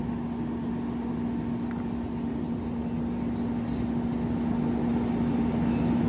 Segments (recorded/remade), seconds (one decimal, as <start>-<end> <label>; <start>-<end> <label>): 0.0-6.1 recorded